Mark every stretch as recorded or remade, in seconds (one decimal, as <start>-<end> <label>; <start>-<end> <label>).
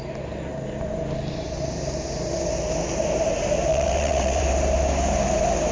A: 0.0-3.7 recorded; 3.7-4.4 remade; 4.4-5.7 recorded